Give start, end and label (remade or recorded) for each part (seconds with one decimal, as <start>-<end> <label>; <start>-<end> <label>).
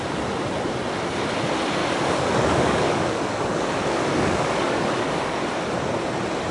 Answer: 0.0-1.8 recorded; 1.8-5.4 remade; 5.4-6.5 recorded